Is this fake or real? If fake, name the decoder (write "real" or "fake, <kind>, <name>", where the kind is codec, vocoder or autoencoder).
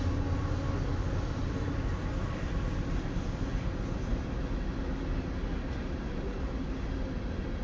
real